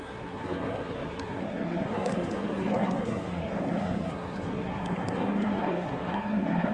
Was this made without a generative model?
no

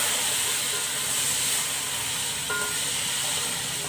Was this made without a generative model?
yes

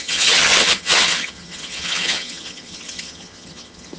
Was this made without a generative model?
no